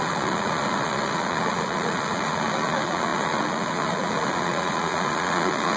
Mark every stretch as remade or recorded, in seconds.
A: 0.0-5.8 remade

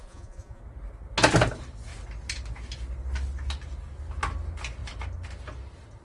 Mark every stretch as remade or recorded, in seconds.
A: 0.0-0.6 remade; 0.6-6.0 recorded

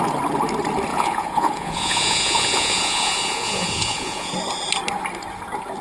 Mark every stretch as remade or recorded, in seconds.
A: 0.0-0.9 recorded; 0.9-4.3 remade; 4.3-5.8 recorded